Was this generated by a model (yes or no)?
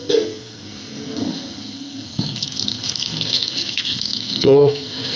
yes